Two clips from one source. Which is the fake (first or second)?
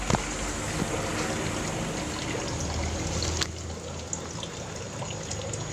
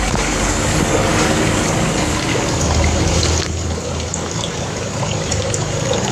second